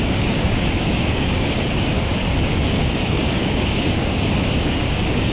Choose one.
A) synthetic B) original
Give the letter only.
A